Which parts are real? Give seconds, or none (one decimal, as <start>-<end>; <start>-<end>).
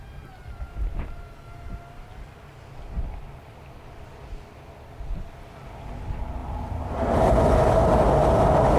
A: 0.0-8.8